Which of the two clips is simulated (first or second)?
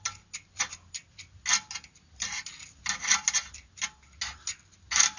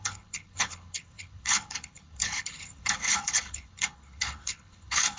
second